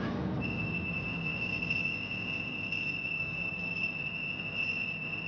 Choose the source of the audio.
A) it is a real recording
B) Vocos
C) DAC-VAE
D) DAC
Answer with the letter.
A